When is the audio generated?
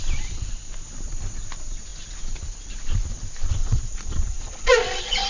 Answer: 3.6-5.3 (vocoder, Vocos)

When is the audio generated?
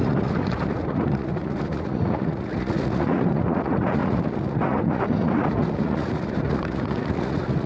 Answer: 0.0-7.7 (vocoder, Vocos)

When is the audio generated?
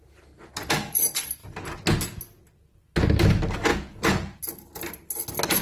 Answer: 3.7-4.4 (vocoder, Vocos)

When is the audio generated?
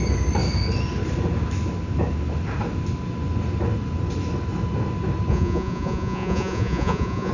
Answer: 5.3-7.3 (vocoder, Vocos)